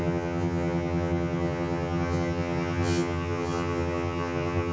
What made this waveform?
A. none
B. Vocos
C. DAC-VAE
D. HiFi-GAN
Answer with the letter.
D